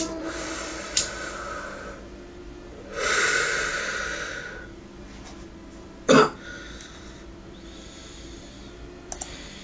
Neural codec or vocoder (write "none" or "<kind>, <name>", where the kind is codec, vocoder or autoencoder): none